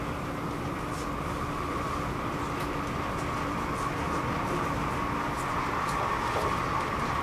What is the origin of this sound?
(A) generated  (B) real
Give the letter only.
B